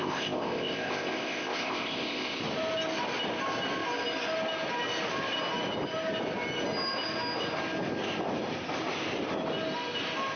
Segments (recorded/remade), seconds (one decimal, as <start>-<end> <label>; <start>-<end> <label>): 0.0-2.4 remade; 2.4-10.4 recorded